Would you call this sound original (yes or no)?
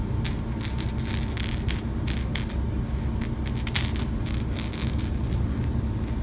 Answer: yes